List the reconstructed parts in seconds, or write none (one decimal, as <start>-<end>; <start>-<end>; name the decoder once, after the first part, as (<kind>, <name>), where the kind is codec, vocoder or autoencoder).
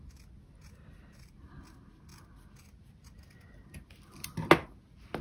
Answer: none